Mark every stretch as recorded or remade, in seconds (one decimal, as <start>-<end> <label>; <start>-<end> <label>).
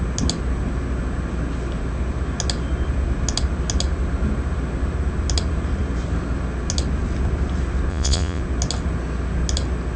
0.0-7.9 recorded; 7.9-8.4 remade; 8.4-10.0 recorded